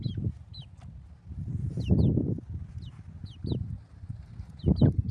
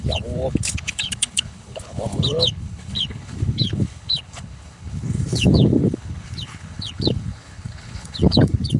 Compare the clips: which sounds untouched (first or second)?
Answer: first